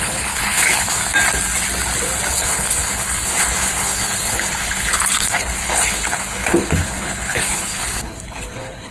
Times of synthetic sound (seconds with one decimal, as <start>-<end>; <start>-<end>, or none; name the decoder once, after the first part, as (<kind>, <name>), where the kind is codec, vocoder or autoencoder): 0.0-1.0 (codec, HILCodec); 2.3-8.9